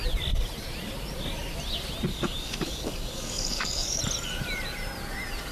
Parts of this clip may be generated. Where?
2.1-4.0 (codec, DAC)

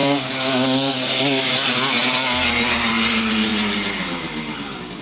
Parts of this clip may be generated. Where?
0.0-1.5 (codec, DAC)